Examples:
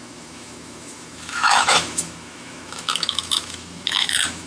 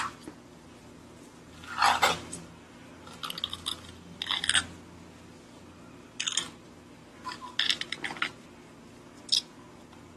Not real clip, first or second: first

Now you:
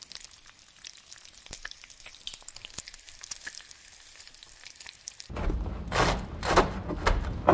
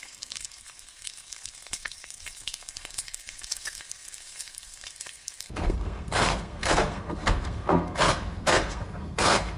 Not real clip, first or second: second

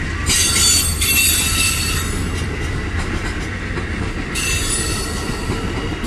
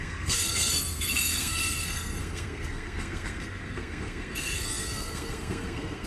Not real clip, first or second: second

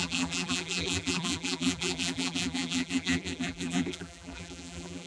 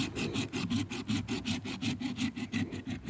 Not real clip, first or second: first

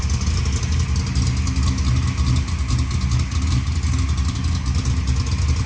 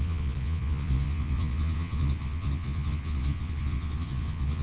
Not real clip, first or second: second